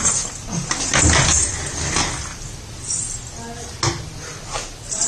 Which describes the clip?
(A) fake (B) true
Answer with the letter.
B